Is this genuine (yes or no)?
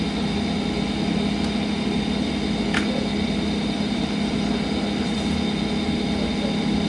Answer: yes